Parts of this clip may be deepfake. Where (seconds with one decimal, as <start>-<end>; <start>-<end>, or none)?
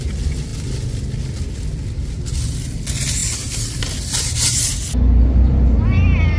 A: none